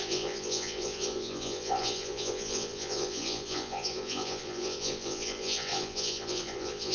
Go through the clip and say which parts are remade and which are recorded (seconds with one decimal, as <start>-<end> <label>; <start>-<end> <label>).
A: 0.0-6.9 remade